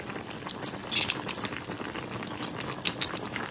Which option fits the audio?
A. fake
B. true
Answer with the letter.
B